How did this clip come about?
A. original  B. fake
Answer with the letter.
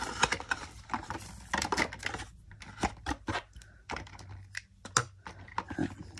A